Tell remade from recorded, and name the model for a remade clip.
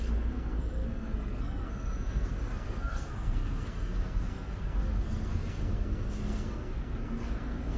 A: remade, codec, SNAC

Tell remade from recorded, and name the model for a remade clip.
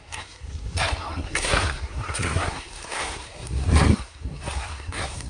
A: remade, codec, SNAC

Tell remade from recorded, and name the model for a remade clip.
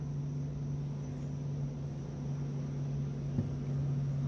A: recorded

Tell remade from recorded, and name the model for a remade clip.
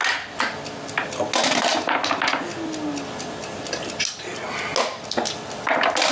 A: recorded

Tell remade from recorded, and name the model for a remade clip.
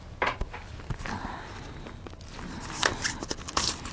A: recorded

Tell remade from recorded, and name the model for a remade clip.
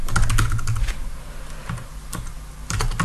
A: recorded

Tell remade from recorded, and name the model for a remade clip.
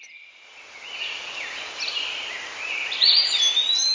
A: recorded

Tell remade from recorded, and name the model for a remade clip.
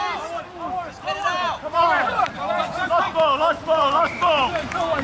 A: recorded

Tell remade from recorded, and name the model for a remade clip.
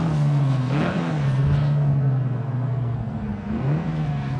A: remade, codec, SNAC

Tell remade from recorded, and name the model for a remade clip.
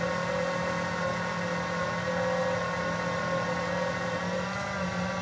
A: recorded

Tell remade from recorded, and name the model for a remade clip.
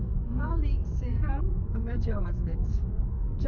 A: remade, codec, SNAC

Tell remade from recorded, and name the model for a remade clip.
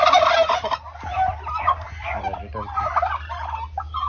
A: recorded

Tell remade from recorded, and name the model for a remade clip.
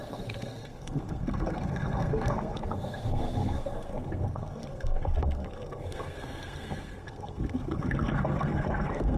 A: remade, codec, SNAC